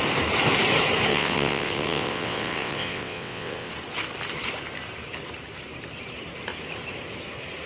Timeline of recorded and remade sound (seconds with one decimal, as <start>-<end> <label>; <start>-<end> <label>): 0.0-1.1 recorded; 1.1-3.7 remade; 3.7-7.7 recorded